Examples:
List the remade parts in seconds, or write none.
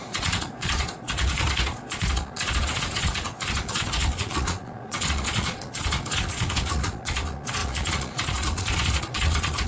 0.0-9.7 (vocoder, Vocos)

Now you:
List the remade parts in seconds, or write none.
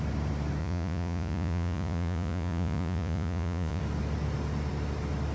0.6-3.8 (vocoder, Vocos)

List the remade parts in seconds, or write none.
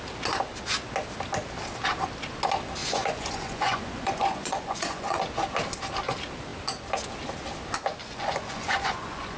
2.8-5.2 (vocoder, Vocos); 8.0-9.4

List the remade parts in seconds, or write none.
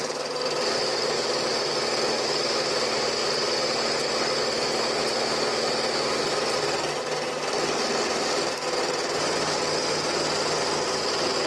none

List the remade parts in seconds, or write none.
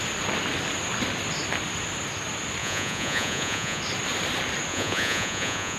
2.6-3.8 (vocoder, Vocos); 4.7-5.8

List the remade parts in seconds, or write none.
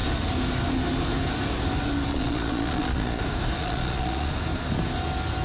2.1-3.2 (vocoder, Vocos); 3.6-4.3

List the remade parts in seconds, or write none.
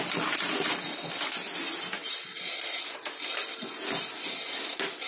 none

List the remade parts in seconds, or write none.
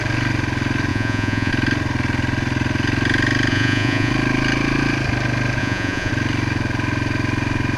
0.9-1.5 (vocoder, Vocos); 3.5-4.1; 5.6-6.1